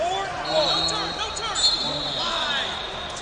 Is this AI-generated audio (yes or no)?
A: no